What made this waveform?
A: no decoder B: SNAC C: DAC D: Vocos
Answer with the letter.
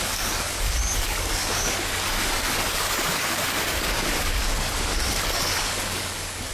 C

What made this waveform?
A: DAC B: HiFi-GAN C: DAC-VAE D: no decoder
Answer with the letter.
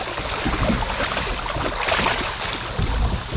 D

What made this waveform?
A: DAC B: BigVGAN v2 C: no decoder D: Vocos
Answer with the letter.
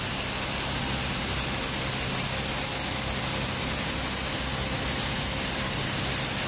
C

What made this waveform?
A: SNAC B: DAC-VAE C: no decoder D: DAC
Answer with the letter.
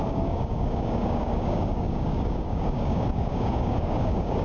D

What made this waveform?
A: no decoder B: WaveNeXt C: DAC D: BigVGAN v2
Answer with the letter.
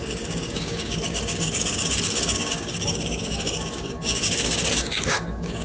C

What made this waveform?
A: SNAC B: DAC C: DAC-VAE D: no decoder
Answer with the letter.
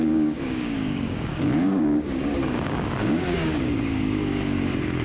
B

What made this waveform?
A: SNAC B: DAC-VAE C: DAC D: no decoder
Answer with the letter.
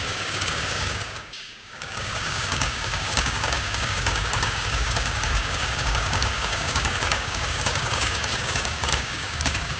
C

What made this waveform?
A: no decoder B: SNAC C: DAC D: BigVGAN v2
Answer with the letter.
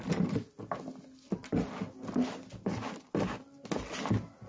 A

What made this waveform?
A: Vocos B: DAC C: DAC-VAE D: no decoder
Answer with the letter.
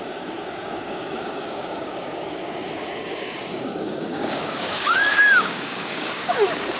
B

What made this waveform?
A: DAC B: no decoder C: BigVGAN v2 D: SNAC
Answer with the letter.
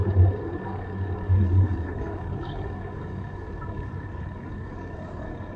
A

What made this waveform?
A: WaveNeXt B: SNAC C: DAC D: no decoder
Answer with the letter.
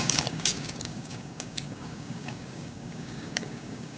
C